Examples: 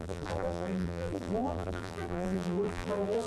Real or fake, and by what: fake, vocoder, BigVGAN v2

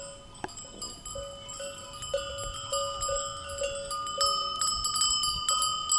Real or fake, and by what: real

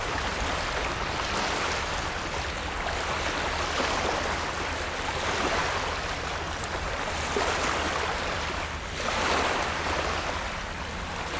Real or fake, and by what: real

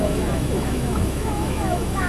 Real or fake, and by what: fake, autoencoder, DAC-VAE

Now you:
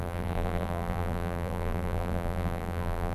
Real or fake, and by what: fake, vocoder, BigVGAN v2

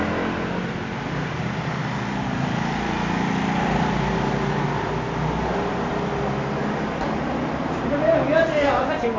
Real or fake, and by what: real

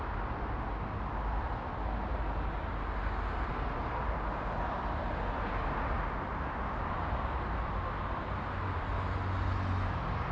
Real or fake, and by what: real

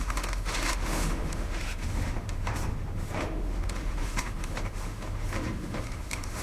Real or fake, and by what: fake, autoencoder, DAC-VAE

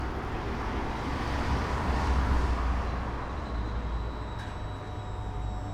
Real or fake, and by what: real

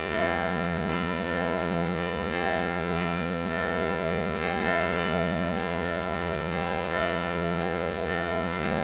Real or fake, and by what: fake, vocoder, Vocos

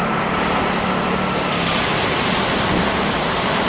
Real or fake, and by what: real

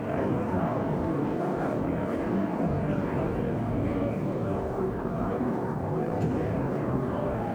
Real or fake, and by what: fake, codec, DAC